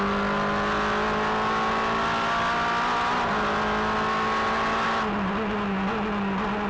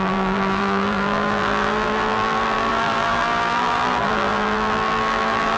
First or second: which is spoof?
second